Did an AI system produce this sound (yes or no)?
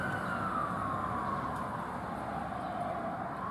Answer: no